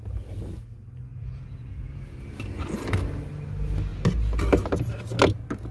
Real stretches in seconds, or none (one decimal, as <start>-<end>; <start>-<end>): 0.0-1.1; 2.3-5.7